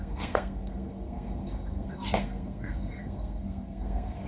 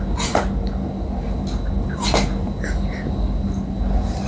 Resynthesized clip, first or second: first